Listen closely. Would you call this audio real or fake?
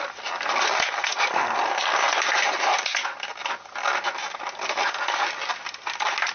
real